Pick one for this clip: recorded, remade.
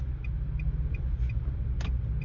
recorded